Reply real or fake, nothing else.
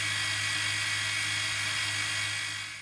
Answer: real